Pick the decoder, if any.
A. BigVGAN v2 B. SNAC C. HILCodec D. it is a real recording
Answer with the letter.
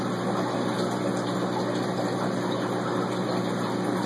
D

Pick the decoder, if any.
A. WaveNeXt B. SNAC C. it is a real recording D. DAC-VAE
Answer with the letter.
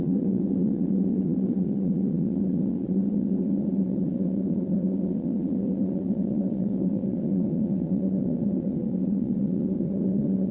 A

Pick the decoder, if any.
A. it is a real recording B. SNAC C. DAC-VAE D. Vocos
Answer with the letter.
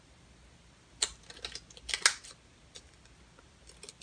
A